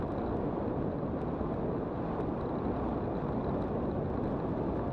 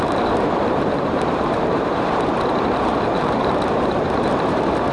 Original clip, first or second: first